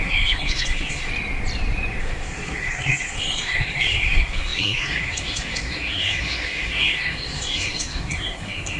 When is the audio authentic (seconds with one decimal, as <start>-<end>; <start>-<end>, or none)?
1.1-2.0

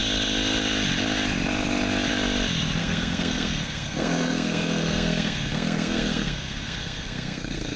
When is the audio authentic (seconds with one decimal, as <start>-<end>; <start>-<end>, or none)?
0.0-2.8